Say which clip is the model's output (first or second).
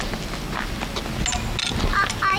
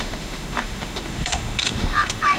second